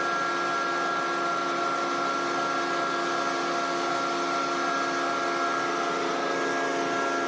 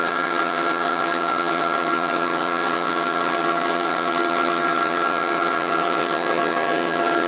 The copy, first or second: second